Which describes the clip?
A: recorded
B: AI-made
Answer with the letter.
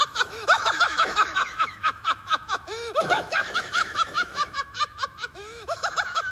B